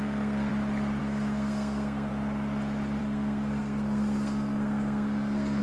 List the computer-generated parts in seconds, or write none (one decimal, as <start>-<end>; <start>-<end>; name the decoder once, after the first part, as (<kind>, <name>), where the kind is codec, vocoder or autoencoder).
0.0-0.5 (codec, SNAC); 1.0-2.1; 3.0-5.6